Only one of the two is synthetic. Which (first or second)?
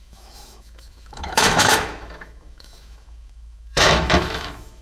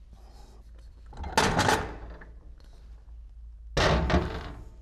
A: first